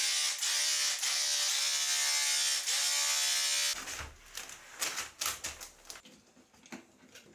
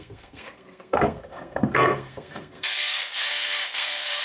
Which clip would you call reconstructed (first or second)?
second